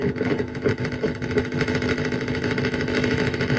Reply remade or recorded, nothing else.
remade